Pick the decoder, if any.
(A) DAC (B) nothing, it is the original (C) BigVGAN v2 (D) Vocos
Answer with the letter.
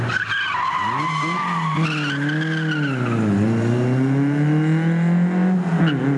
B